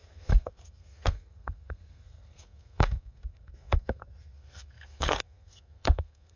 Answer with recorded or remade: remade